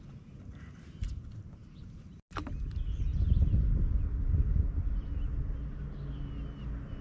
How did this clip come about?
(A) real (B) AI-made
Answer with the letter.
A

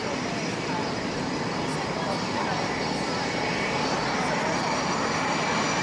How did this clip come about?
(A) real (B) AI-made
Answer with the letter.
A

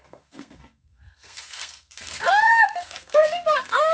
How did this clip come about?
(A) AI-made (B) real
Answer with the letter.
A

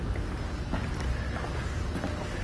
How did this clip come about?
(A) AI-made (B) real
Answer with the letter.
B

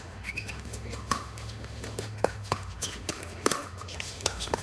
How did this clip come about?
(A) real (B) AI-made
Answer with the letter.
B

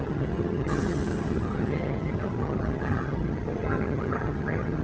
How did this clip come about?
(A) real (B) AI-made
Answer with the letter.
B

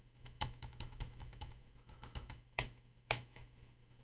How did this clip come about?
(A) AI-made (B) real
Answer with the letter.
A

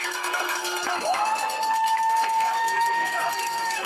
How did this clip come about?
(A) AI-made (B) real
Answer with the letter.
A